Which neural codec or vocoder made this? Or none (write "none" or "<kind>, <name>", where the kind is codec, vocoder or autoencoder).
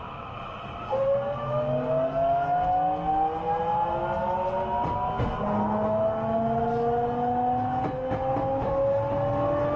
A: none